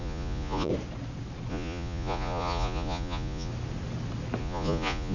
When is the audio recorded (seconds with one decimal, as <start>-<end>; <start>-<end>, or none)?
0.7-1.5; 3.5-4.4